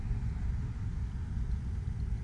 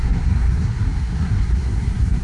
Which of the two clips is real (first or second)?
first